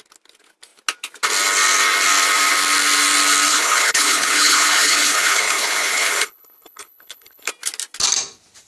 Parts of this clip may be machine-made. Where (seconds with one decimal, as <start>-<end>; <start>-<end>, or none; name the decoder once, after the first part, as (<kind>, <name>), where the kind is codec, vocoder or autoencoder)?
3.5-7.5 (codec, HILCodec)